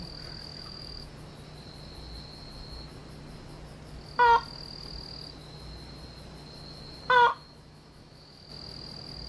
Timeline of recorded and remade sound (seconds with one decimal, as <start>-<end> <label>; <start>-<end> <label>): 0.0-0.5 recorded; 0.5-1.1 remade; 1.1-7.3 recorded; 7.3-8.5 remade; 8.5-9.3 recorded